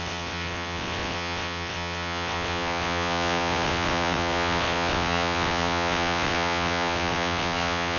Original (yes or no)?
no